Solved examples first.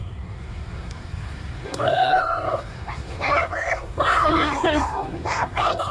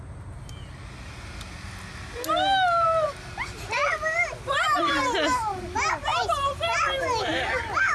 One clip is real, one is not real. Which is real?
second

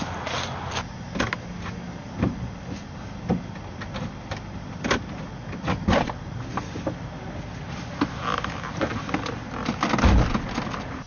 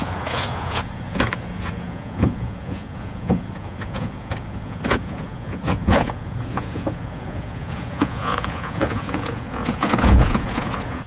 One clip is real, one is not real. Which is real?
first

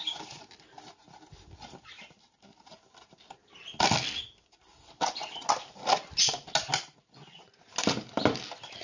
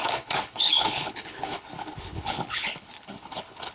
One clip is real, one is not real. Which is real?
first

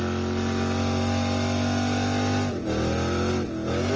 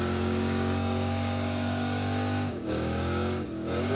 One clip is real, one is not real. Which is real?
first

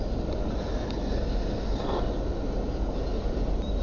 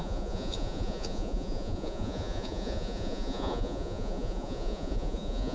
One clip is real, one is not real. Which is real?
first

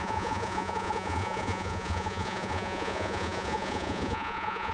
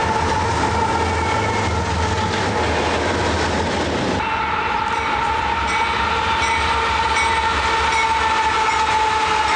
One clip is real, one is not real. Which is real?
second